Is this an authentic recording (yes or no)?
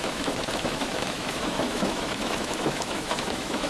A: no